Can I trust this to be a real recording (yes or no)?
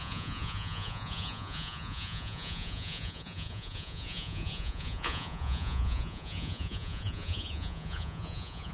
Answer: no